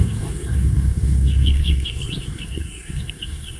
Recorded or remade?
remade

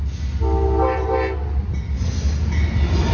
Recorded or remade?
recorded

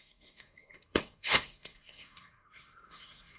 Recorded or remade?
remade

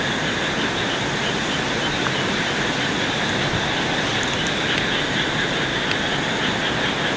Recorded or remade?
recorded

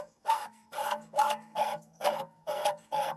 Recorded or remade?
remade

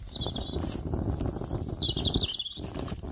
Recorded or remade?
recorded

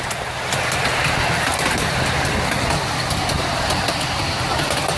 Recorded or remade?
recorded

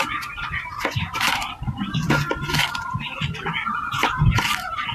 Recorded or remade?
recorded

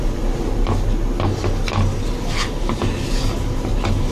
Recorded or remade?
recorded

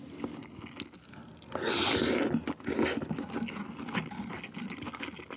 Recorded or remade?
recorded